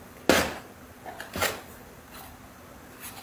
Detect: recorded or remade recorded